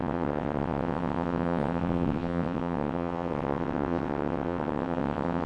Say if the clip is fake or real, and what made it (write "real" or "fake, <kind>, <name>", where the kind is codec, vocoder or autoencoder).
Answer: fake, vocoder, WaveNeXt